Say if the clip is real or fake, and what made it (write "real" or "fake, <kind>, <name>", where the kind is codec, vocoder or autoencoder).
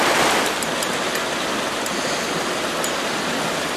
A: real